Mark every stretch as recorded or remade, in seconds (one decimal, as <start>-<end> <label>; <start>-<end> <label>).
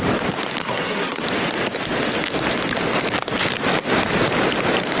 0.0-0.6 recorded; 0.6-1.2 remade; 1.2-5.0 recorded